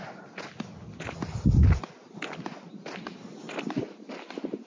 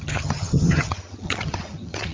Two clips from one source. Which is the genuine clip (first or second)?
first